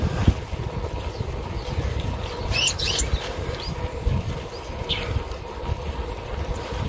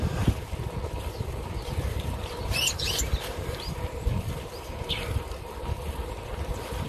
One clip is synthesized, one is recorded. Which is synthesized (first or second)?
second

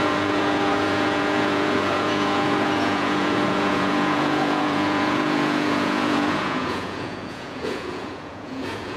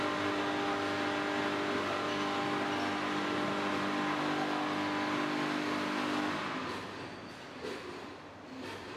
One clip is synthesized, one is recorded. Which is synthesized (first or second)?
first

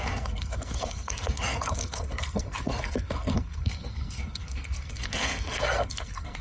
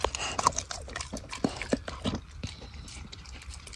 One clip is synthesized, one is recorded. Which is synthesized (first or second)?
first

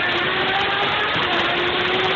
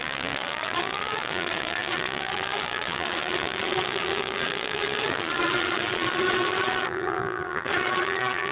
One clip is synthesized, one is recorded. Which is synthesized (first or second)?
second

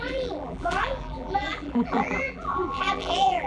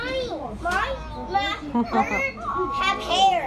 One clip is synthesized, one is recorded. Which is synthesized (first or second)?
first